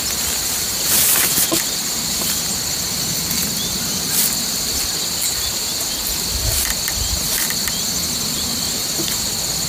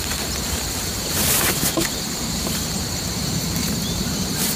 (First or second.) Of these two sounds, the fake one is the second